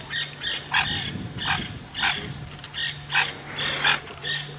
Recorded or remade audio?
recorded